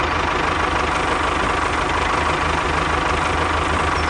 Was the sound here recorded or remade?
recorded